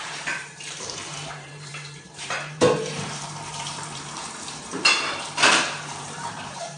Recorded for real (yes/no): no